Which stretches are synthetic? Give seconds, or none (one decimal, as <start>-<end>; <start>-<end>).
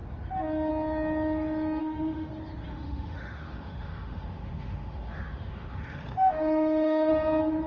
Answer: 1.8-2.3; 2.7-7.1